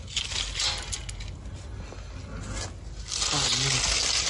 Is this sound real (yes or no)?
yes